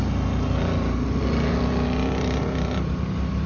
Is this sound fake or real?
real